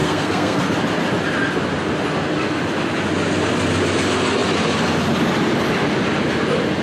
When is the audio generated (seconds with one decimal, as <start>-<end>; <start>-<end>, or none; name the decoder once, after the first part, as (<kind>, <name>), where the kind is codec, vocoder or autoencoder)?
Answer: 0.0-0.6 (codec, SNAC)